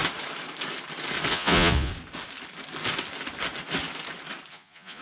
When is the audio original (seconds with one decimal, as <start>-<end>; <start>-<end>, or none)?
0.0-1.3; 1.9-4.5